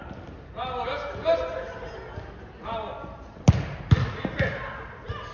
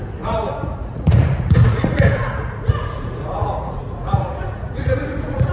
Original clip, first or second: first